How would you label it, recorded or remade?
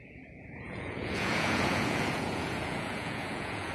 remade